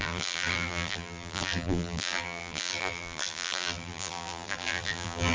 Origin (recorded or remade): remade